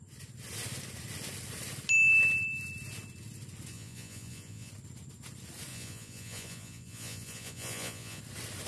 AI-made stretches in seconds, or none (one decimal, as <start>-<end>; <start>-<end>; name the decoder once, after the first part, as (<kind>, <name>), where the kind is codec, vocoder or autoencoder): 3.7-4.7 (vocoder, Vocos); 5.7-8.2